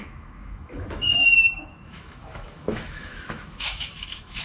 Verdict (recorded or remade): remade